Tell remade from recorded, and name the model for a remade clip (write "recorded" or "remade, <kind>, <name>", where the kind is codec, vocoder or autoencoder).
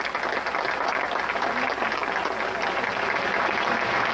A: recorded